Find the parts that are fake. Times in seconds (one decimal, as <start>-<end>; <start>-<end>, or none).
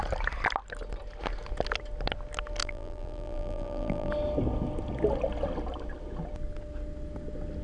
2.6-4.1